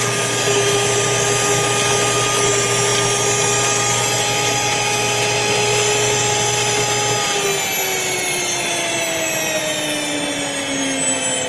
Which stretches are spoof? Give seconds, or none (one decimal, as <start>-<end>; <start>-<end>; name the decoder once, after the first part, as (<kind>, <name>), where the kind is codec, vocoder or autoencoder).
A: none